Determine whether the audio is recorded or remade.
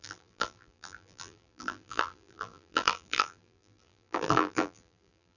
remade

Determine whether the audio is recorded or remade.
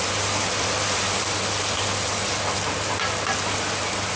recorded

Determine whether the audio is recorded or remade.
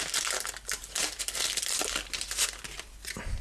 remade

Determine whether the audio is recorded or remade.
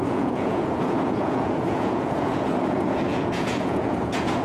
remade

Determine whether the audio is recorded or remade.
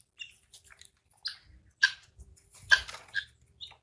recorded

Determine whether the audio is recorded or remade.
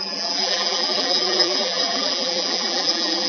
remade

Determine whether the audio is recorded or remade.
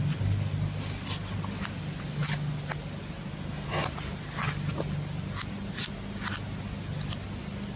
recorded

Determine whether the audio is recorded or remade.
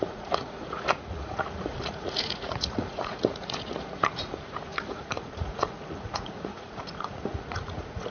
remade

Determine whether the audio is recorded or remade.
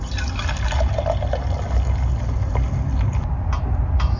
recorded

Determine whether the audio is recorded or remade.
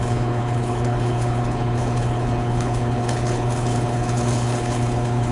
remade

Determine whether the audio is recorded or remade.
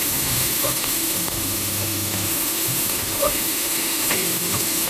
remade